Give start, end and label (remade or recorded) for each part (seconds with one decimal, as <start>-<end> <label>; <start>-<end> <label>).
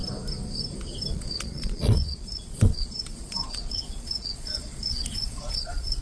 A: 0.0-1.1 recorded; 1.1-6.0 remade